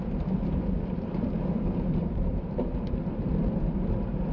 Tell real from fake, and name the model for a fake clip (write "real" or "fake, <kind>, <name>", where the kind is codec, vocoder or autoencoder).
real